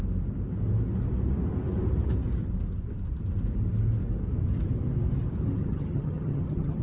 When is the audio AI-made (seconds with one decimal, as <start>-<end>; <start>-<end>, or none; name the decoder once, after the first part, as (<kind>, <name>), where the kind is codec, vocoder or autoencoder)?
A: 5.6-6.8 (vocoder, HiFi-GAN)